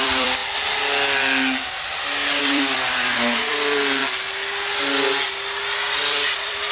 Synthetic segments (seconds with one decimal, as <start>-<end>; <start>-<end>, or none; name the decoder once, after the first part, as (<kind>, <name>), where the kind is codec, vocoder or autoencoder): 0.0-0.4 (vocoder, BigVGAN v2); 2.4-4.0; 6.0-6.7